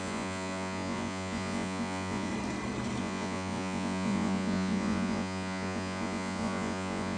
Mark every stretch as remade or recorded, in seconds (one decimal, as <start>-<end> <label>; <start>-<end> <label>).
0.0-2.3 remade; 2.3-3.0 recorded; 3.0-7.2 remade